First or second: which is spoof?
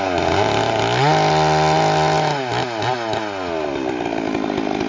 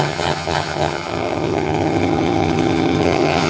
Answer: second